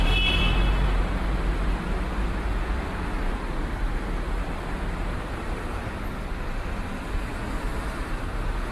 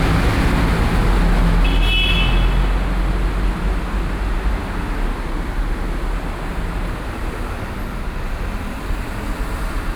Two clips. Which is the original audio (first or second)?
second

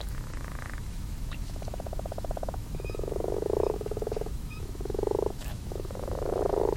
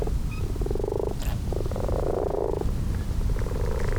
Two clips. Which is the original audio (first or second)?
second